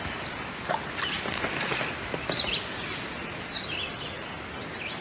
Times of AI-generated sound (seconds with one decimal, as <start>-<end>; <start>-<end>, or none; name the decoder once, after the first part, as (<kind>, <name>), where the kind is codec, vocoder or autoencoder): none